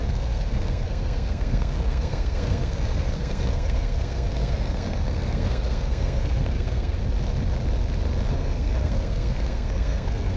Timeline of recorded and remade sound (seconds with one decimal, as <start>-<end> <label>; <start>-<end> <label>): 0.0-7.0 remade; 7.0-8.3 recorded; 8.3-10.4 remade